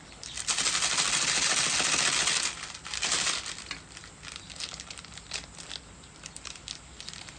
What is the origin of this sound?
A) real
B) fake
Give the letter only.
A